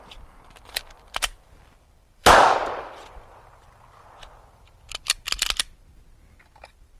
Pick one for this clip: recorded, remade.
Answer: remade